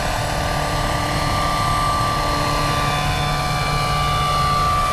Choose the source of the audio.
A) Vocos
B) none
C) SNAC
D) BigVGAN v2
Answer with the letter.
B